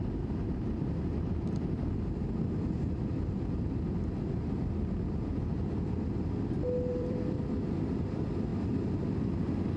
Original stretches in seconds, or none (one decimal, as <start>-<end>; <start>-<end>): 0.0-6.9; 7.4-9.8